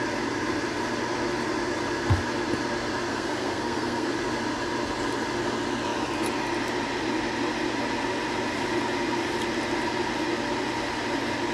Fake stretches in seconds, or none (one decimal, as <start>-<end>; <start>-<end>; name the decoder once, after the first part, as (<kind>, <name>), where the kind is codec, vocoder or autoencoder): 3.1-4.1 (codec, SNAC)